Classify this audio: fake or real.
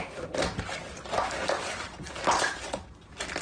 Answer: real